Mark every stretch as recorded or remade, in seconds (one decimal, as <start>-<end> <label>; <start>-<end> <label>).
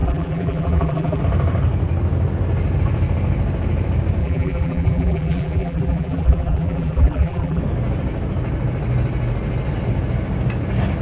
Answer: 0.0-1.2 remade; 1.2-4.2 recorded; 4.2-7.6 remade; 7.6-11.0 recorded